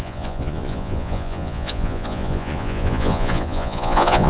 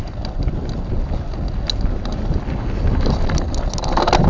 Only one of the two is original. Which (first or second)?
second